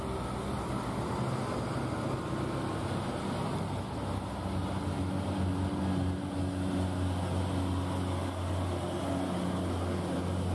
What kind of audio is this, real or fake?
real